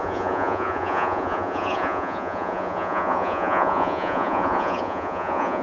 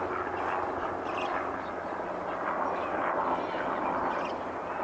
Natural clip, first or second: second